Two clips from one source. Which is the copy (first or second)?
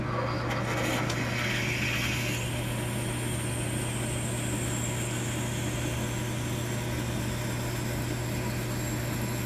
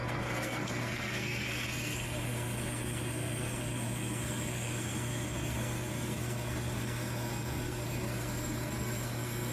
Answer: second